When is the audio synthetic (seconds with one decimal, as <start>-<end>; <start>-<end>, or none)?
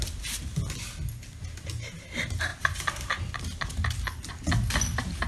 none